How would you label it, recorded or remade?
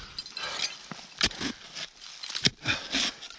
recorded